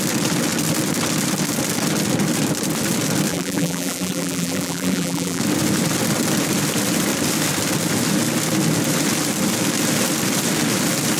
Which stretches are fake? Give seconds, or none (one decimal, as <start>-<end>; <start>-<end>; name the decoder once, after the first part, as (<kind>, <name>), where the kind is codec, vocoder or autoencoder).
3.3-5.4 (vocoder, BigVGAN v2)